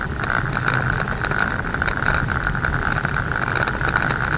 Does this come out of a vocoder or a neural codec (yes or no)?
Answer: no